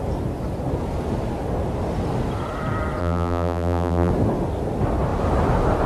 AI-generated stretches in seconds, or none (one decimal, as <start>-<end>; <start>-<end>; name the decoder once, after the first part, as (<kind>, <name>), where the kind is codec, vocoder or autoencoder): 3.0-4.1 (vocoder, BigVGAN v2)